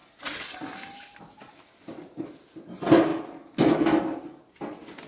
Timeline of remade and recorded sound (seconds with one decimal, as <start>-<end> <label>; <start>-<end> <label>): 0.0-5.1 recorded